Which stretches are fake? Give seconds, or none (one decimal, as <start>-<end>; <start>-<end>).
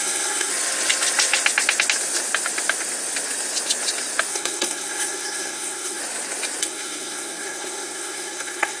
0.0-0.5; 4.3-6.0; 6.6-8.8